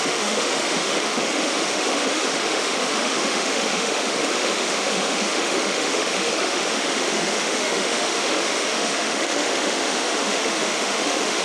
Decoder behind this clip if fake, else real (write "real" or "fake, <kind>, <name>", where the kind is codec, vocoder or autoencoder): fake, autoencoder, DAC-VAE